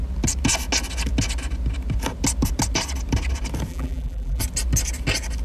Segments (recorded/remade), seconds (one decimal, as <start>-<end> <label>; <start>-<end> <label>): 0.0-3.7 recorded; 3.7-4.4 remade; 4.4-5.4 recorded